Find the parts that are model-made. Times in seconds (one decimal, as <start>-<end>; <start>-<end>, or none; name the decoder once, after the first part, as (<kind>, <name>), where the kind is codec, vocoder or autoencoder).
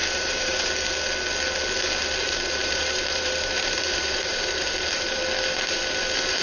0.0-0.7 (vocoder, BigVGAN v2); 2.2-5.2